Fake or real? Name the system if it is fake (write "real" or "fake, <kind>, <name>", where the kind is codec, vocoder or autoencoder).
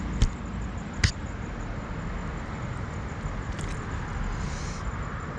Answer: real